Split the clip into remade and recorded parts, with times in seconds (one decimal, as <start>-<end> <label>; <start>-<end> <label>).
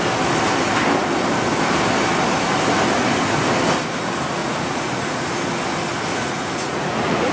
0.0-4.4 recorded; 4.4-5.3 remade; 5.3-6.1 recorded; 6.1-7.3 remade